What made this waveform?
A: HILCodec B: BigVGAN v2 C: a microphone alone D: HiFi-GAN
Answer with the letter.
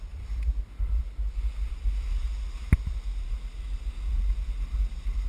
C